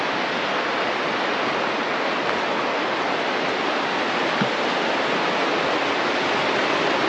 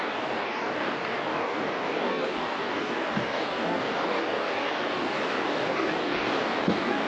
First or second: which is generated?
second